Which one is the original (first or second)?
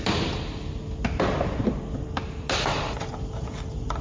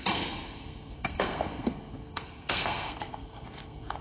first